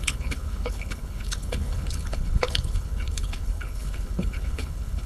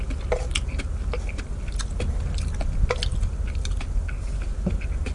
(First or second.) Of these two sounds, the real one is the second